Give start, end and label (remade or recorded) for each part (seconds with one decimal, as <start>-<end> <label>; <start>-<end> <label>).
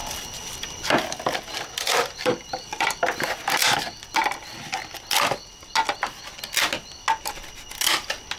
0.0-0.9 remade; 0.9-1.5 recorded; 1.5-3.6 remade; 3.6-8.4 recorded